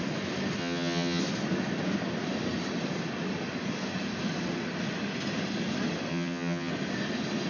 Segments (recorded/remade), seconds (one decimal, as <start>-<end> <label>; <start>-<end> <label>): 0.0-0.6 recorded; 0.6-1.2 remade; 1.2-6.1 recorded; 6.1-6.7 remade; 6.7-7.5 recorded